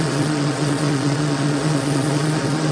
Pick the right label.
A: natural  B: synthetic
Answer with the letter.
B